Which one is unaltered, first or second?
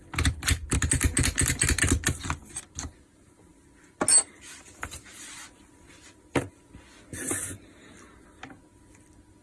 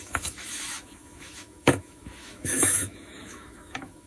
first